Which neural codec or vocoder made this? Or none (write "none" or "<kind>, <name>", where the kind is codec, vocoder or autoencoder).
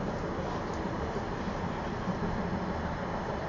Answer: none